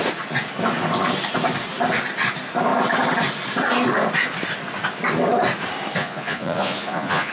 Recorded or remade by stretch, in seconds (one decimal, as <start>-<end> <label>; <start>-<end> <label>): 0.0-6.0 recorded; 6.0-7.3 remade